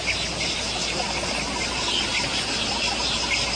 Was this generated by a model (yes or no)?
no